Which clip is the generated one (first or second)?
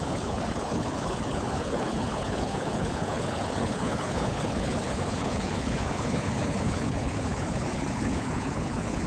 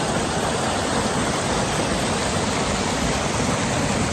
first